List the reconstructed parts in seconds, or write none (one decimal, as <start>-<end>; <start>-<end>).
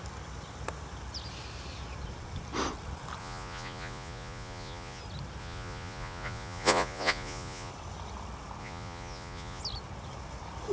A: 3.2-5.0; 5.4-7.7; 8.6-9.6